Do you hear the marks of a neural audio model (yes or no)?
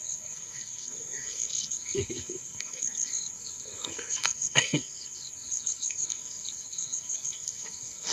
yes